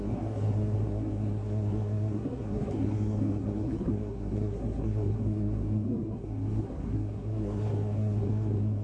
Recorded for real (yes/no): no